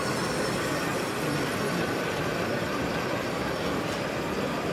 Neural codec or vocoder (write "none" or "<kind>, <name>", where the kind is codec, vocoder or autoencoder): none